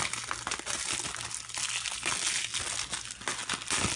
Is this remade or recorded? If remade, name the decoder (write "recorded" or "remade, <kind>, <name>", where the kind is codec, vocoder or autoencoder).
recorded